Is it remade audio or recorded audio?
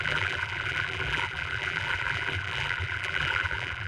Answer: remade